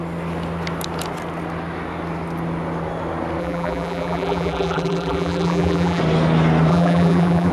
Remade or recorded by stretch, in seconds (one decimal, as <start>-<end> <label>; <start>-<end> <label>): 0.0-3.4 recorded; 3.4-6.0 remade; 6.0-6.7 recorded; 6.7-7.5 remade